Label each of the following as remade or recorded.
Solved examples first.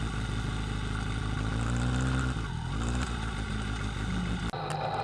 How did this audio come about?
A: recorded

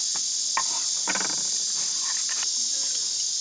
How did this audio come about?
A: recorded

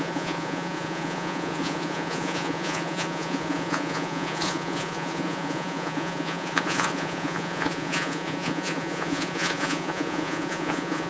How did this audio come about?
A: remade